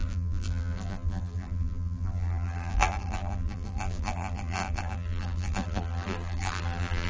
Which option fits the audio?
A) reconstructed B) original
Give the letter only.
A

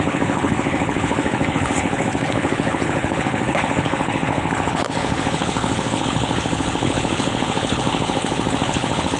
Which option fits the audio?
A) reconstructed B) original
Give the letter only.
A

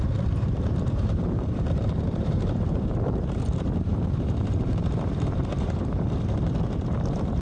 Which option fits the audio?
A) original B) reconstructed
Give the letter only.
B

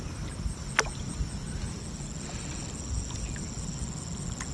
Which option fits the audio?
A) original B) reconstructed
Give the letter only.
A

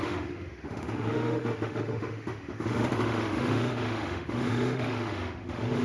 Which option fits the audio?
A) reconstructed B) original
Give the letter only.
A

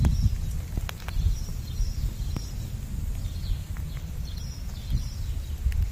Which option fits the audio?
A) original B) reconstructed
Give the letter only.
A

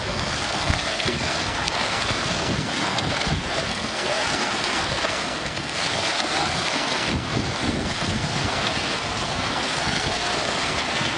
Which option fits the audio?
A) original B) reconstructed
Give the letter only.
B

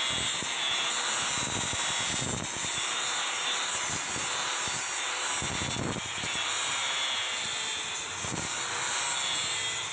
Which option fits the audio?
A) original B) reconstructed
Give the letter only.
A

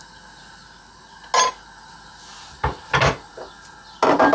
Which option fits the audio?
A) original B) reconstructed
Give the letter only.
A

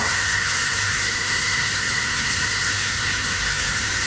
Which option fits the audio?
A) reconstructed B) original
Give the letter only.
A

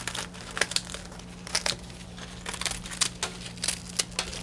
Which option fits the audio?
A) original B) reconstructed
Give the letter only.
A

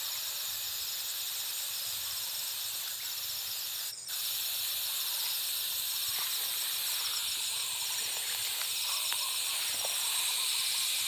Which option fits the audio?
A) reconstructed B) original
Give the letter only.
B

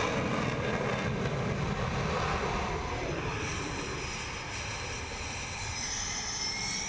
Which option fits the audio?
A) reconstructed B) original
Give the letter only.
B